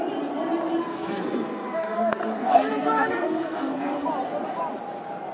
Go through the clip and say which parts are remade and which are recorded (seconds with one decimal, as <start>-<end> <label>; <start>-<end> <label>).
0.0-0.9 recorded; 0.9-4.1 remade; 4.1-5.3 recorded